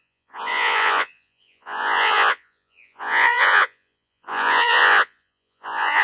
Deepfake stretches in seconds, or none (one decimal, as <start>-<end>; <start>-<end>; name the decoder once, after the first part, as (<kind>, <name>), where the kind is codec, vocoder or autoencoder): 0.0-6.0 (vocoder, Vocos)